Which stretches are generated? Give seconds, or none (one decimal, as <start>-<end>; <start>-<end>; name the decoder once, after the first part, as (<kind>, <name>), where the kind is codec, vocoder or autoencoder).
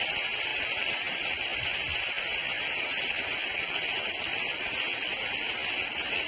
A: none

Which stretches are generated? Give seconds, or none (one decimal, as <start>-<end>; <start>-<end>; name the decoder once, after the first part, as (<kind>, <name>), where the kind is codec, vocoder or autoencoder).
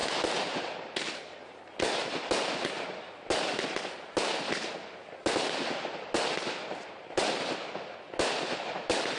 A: none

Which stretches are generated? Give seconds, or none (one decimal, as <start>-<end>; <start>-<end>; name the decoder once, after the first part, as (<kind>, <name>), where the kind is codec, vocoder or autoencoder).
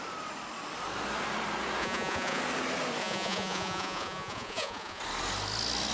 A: 1.8-2.4 (vocoder, Vocos); 3.0-5.0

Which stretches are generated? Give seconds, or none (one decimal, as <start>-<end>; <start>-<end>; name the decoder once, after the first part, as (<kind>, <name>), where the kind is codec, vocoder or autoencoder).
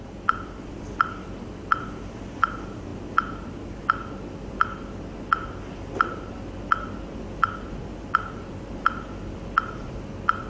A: none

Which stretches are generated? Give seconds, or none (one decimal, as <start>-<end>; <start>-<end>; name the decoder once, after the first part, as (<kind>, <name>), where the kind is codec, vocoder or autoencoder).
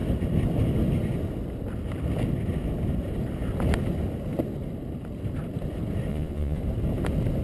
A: 6.1-6.6 (vocoder, Vocos)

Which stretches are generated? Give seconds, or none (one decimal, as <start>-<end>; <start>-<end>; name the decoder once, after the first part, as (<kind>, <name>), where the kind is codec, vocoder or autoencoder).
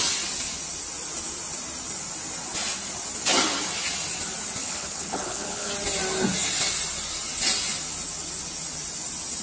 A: 4.6-5.7 (codec, HILCodec)